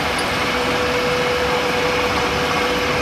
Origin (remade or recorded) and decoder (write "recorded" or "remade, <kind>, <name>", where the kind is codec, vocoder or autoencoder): recorded